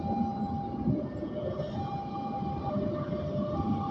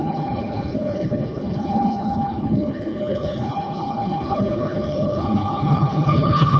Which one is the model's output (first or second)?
second